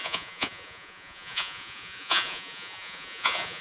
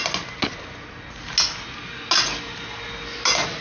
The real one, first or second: second